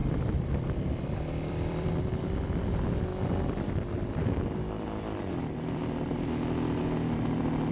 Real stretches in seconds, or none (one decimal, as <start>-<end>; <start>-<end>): 2.0-3.1